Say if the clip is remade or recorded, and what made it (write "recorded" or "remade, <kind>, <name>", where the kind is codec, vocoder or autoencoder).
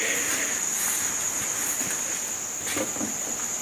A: recorded